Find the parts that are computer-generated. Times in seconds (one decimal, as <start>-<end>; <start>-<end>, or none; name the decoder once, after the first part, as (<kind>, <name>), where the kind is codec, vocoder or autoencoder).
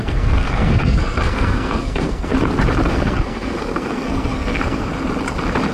0.0-2.3 (codec, SNAC); 2.9-4.9